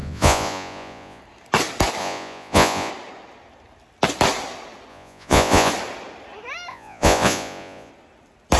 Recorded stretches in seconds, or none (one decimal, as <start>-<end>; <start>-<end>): 1.2-2.0; 2.9-4.9; 5.7-6.7; 7.9-8.6